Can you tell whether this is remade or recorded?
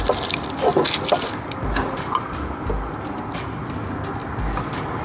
recorded